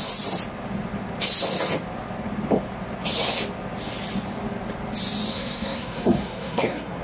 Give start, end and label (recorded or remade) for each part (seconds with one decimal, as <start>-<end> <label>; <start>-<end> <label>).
0.0-5.3 recorded; 5.3-7.0 remade